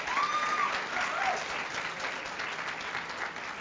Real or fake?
real